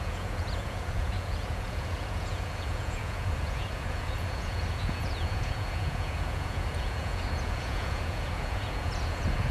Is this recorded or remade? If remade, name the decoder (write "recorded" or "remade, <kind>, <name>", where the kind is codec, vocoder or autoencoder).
remade, vocoder, Vocos